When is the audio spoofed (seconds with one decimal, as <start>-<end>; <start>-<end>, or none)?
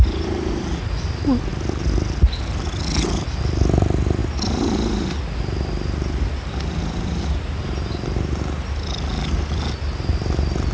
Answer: none